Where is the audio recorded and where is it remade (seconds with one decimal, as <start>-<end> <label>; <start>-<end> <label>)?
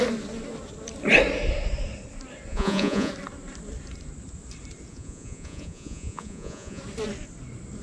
0.0-2.5 recorded; 2.5-3.1 remade; 3.1-4.9 recorded; 4.9-6.8 remade; 6.8-7.8 recorded